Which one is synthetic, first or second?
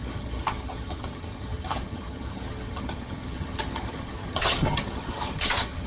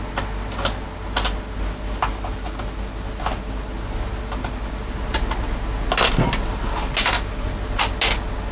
first